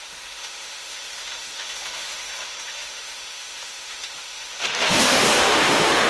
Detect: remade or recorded remade